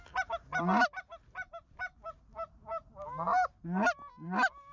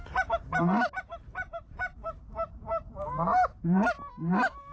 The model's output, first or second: second